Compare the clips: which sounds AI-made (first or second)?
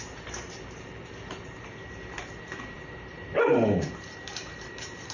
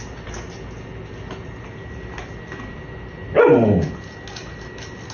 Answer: first